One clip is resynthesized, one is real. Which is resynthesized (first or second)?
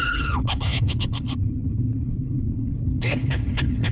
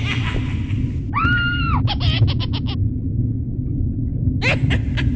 first